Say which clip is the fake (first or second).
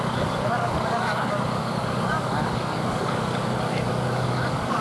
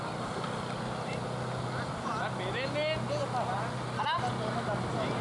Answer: first